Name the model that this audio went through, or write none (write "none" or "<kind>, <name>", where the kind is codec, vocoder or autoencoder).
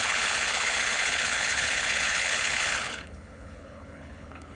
codec, HILCodec